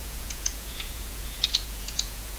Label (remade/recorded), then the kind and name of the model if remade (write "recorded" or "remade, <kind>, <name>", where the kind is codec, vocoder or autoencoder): remade, vocoder, Vocos